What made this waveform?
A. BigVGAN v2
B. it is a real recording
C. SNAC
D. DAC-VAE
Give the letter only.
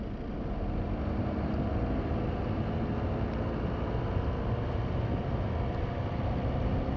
B